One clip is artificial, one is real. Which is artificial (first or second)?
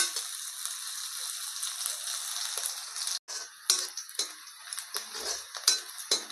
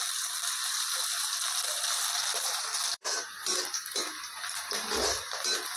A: second